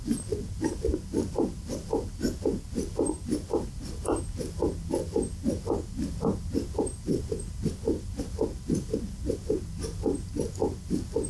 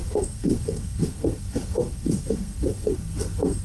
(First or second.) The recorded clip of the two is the first